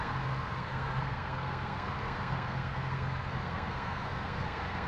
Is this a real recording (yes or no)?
no